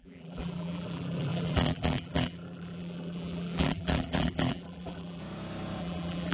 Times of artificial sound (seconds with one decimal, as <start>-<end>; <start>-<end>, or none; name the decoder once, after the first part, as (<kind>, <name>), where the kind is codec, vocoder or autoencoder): 0.0-5.2 (vocoder, BigVGAN v2); 5.8-6.3